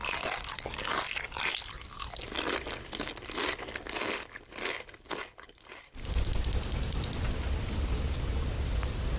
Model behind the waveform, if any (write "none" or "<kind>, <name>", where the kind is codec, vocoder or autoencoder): none